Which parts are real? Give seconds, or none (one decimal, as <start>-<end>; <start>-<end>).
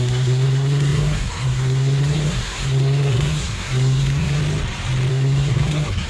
4.4-5.1